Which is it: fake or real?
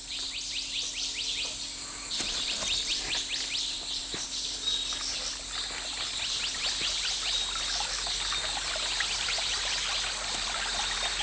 real